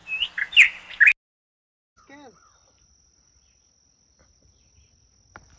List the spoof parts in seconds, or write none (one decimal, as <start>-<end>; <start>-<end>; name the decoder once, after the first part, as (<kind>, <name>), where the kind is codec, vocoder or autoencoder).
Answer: none